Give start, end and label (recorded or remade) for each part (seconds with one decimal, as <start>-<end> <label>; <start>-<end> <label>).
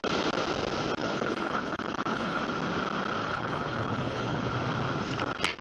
0.0-1.0 recorded; 1.0-2.4 remade; 2.4-3.2 recorded; 3.2-4.5 remade; 4.5-5.6 recorded